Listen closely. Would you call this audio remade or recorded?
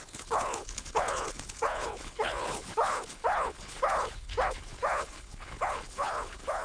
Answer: remade